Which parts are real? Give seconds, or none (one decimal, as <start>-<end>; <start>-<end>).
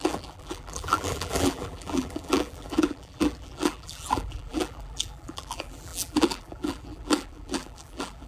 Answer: none